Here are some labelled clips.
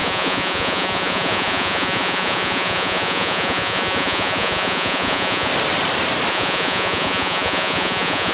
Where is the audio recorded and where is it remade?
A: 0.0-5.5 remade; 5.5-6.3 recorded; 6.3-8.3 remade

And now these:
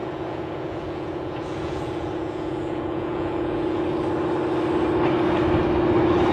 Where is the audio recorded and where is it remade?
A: 0.0-3.8 remade; 3.8-6.3 recorded